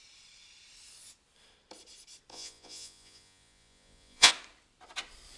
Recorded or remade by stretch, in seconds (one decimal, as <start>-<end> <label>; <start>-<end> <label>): 0.0-2.3 recorded; 2.3-4.3 remade; 4.3-5.4 recorded

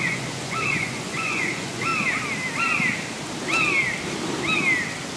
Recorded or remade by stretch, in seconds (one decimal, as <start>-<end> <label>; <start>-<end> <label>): 0.0-1.9 remade; 1.9-5.2 recorded

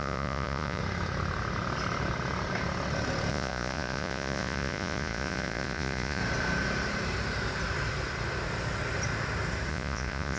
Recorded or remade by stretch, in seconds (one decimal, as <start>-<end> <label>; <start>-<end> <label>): 0.0-0.8 remade; 0.8-3.3 recorded; 3.3-6.2 remade; 6.2-9.7 recorded; 9.7-10.4 remade

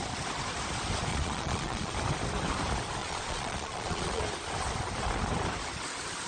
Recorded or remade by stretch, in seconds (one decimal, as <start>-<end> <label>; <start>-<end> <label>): 0.0-1.1 recorded; 1.1-1.9 remade; 1.9-3.0 recorded; 3.0-4.2 remade; 4.2-6.3 recorded

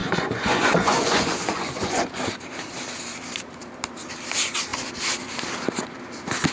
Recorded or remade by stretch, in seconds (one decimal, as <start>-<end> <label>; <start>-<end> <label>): 0.0-2.2 remade; 2.2-6.5 recorded

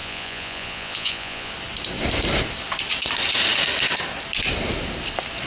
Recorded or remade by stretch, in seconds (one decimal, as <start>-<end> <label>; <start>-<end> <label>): 0.0-1.5 remade; 1.5-5.5 recorded